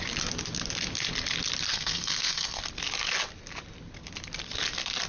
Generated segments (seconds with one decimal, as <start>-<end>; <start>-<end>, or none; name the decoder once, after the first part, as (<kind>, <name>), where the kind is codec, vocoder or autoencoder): 1.7-2.6 (codec, SNAC)

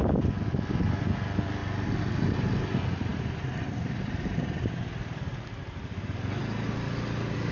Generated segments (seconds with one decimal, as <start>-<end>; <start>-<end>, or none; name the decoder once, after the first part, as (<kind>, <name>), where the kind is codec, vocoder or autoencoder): none

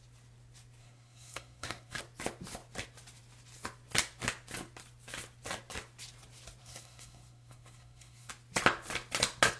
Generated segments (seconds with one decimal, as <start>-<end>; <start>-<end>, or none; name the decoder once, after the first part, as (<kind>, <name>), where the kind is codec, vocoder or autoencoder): 0.8-2.0 (codec, SNAC); 6.6-8.3

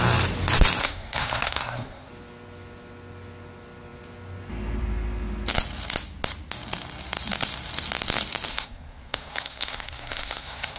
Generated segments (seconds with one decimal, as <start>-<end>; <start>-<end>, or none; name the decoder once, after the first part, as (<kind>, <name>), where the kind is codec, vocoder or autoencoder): 0.8-2.1 (codec, SNAC); 8.5-10.8

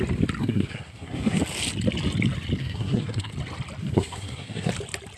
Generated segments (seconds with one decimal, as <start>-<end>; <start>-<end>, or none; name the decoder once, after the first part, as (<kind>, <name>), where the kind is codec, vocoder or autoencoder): 0.4-1.4 (codec, SNAC); 2.6-3.3; 3.8-4.7

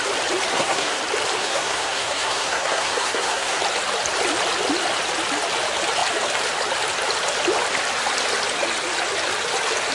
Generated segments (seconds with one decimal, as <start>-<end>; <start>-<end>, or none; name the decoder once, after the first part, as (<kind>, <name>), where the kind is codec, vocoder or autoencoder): 0.5-1.0 (codec, SNAC); 1.4-3.6